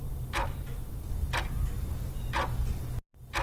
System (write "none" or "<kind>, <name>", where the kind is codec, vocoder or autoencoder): none